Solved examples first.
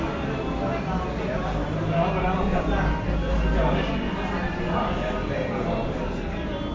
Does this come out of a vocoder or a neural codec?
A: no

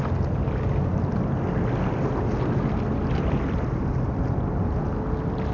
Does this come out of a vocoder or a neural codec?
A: no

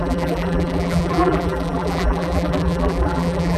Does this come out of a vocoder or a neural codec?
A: yes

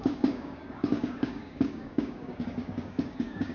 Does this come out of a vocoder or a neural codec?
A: yes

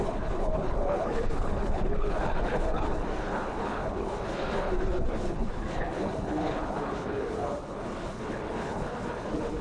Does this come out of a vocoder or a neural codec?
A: yes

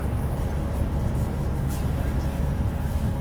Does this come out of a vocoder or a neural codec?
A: no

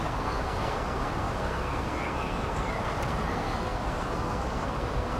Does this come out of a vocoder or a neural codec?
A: yes